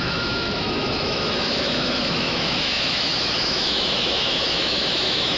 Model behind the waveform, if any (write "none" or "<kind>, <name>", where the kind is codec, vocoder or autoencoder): autoencoder, DAC-VAE